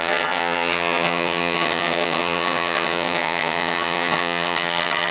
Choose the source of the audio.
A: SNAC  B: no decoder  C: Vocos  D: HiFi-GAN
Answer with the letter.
D